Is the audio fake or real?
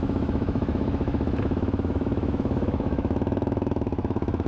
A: fake